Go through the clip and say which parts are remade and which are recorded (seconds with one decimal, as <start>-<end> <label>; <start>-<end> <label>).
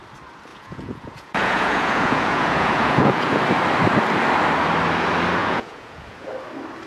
0.0-0.5 recorded; 0.5-3.4 remade; 3.4-5.4 recorded; 5.4-6.3 remade; 6.3-6.9 recorded